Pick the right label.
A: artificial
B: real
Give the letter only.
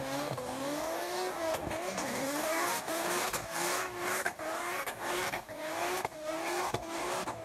A